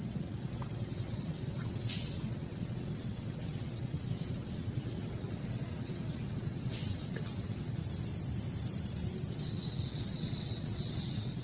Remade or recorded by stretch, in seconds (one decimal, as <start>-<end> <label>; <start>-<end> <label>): 0.0-7.8 remade; 7.8-9.3 recorded; 9.3-11.4 remade